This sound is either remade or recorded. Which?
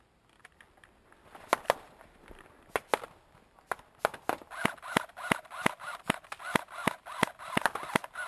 recorded